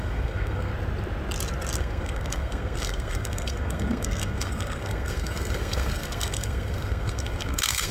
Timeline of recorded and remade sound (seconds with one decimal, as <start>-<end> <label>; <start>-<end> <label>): 0.0-0.7 remade; 0.7-1.8 recorded; 1.8-7.9 remade